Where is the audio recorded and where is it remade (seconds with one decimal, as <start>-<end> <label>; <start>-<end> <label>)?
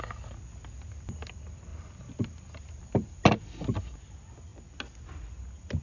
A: 0.0-5.8 recorded